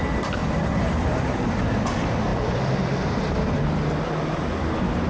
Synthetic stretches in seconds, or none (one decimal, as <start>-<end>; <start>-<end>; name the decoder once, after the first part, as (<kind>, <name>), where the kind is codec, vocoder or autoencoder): 0.4-1.6 (vocoder, BigVGAN v2); 2.3-3.6